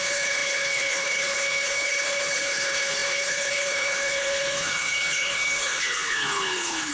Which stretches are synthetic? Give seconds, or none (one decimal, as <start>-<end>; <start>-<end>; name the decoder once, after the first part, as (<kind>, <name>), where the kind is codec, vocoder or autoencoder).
0.0-6.9 (codec, HILCodec)